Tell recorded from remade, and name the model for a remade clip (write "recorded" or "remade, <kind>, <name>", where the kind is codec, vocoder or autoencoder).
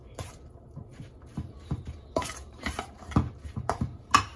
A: remade, vocoder, BigVGAN v2